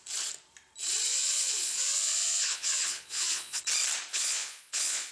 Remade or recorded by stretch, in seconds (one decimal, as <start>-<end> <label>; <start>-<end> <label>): 0.0-1.1 recorded; 1.1-3.6 remade; 3.6-4.1 recorded; 4.1-5.1 remade